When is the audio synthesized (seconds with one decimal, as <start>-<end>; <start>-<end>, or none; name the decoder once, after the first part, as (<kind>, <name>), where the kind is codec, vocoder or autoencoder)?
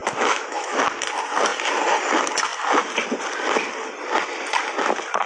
0.0-0.8 (autoencoder, DAC-VAE)